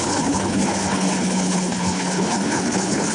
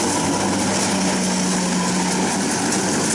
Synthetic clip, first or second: first